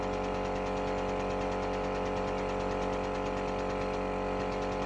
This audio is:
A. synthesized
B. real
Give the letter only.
B